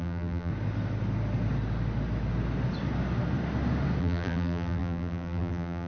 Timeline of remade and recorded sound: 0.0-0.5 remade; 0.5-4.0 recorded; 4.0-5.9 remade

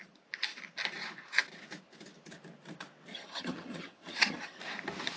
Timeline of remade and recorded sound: 0.0-3.1 recorded; 3.1-4.6 remade; 4.6-5.2 recorded